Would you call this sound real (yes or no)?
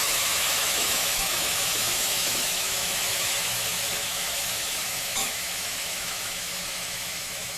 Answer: no